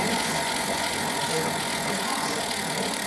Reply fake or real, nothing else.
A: fake